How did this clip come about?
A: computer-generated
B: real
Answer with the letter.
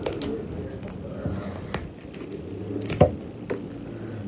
B